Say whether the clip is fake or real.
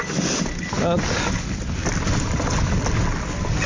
real